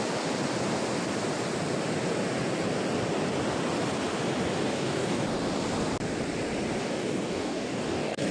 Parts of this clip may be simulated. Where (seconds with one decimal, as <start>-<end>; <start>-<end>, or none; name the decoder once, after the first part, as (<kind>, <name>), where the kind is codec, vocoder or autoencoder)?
4.6-5.2 (codec, DAC); 6.8-8.3